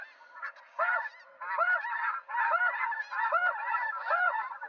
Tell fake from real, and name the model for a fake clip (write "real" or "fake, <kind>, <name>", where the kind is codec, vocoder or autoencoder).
real